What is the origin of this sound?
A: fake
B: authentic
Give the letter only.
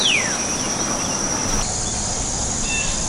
B